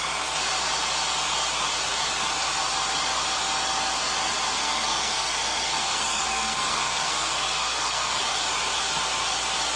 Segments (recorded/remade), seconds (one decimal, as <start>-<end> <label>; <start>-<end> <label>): 0.0-4.5 recorded; 4.5-8.2 remade; 8.2-9.8 recorded